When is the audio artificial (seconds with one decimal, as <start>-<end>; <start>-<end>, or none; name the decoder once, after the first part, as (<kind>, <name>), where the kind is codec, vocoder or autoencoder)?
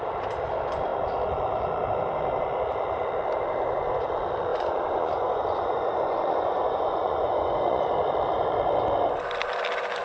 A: 4.5-7.8 (vocoder, Vocos)